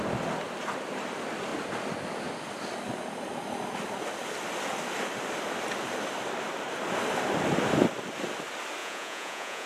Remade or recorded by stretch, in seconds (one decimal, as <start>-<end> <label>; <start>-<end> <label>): 0.0-8.8 recorded; 8.8-9.7 remade

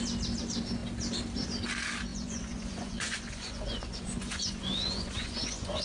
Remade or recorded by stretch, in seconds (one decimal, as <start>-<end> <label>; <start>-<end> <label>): 0.0-2.1 recorded; 2.1-5.8 remade

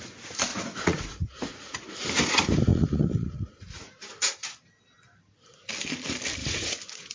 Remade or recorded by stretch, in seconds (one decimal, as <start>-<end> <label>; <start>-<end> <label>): 0.0-0.5 recorded; 0.5-1.9 remade; 1.9-2.7 recorded; 2.7-4.0 remade; 4.0-6.4 recorded; 6.4-7.1 remade